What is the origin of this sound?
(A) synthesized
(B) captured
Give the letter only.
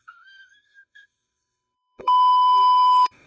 A